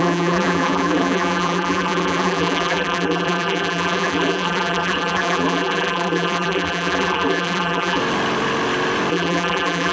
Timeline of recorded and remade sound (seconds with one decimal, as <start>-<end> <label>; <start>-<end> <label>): 0.0-8.0 remade; 8.0-9.1 recorded; 9.1-9.9 remade